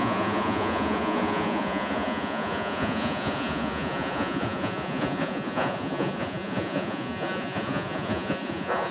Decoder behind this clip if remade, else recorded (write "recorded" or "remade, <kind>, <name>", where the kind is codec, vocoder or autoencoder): remade, vocoder, Vocos